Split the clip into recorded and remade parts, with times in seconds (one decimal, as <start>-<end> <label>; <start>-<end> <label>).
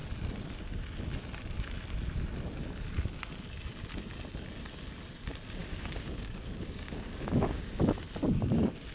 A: 0.0-5.6 recorded; 5.6-7.8 remade; 7.8-8.9 recorded